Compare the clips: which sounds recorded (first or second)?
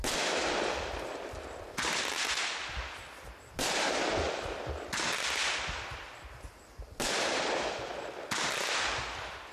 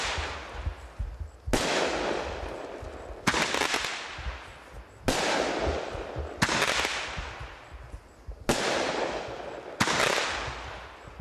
second